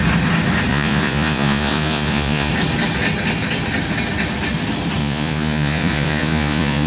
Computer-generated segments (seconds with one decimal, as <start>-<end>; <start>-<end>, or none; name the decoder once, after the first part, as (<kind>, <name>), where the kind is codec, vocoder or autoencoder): 0.7-2.5 (vocoder, Vocos); 5.0-6.9